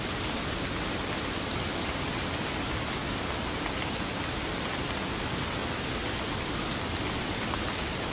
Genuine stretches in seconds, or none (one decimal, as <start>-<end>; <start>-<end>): 0.0-8.1